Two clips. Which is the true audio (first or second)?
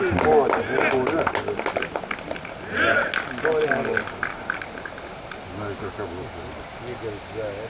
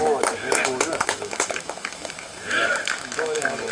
first